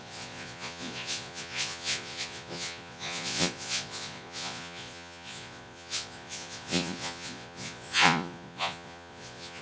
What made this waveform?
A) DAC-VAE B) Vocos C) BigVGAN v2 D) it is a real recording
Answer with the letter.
B